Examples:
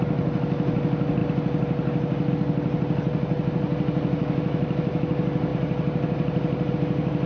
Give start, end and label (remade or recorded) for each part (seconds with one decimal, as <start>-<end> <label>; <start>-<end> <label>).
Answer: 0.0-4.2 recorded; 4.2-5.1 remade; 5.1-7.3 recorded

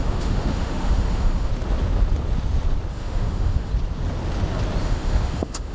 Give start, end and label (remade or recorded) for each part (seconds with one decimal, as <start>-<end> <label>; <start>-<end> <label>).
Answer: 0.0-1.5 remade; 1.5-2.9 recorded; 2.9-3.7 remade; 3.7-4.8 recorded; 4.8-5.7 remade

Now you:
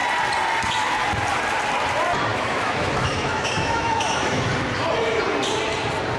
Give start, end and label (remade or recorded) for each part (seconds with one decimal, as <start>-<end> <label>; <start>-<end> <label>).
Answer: 0.0-2.3 recorded; 2.3-4.5 remade; 4.5-6.2 recorded

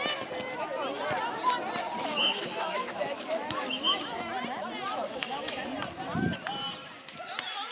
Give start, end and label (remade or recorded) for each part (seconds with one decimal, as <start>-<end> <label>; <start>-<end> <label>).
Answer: 0.0-2.0 recorded; 2.0-4.0 remade; 4.0-4.9 recorded; 4.9-5.6 remade; 5.6-7.7 recorded